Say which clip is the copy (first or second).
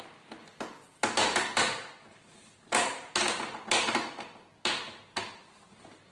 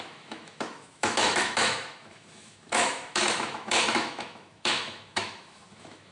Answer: second